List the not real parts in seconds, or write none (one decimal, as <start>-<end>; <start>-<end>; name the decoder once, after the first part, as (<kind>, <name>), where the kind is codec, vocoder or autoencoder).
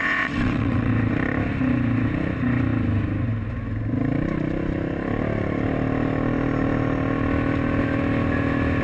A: 0.0-0.9 (vocoder, WaveNeXt)